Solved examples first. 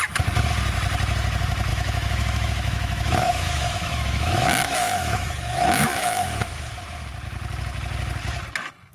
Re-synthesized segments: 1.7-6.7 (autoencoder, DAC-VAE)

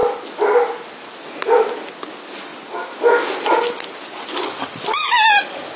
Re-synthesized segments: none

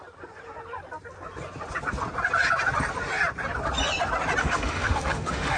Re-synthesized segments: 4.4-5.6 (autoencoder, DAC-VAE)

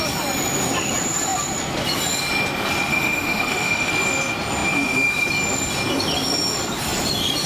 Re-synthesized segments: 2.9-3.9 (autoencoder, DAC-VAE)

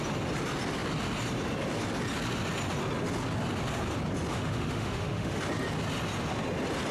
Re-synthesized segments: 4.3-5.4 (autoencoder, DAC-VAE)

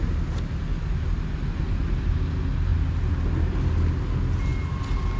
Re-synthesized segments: none

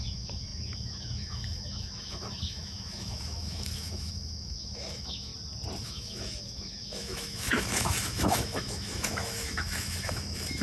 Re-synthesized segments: 0.0-5.3 (autoencoder, DAC-VAE); 5.8-10.6